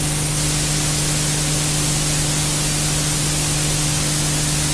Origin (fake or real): real